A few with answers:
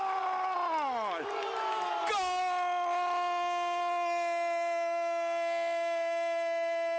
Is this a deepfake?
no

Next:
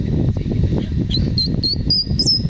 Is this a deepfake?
no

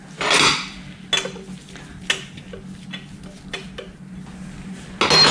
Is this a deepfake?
no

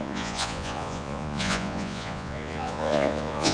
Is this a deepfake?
yes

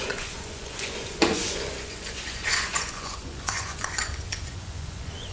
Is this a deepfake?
yes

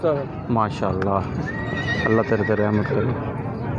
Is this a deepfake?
no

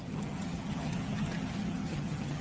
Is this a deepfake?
yes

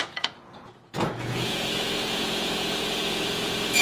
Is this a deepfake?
yes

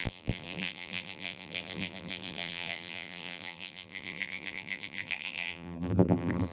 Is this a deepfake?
yes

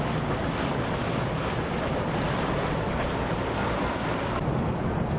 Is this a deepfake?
yes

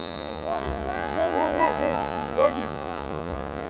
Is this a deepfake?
yes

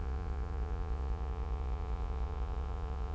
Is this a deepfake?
yes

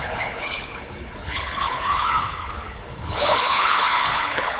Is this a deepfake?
yes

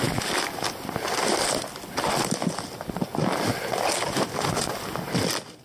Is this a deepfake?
no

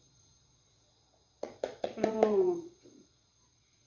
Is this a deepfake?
yes